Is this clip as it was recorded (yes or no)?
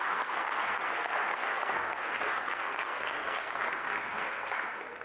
no